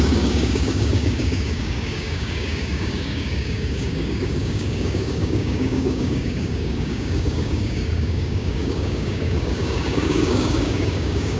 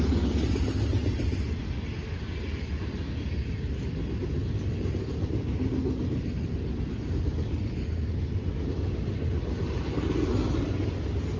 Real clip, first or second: second